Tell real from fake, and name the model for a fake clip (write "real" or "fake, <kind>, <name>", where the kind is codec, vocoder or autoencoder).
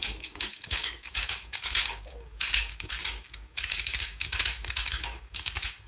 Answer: fake, codec, DAC